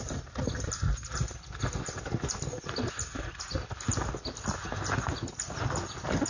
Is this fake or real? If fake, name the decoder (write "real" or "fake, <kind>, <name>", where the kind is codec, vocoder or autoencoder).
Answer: real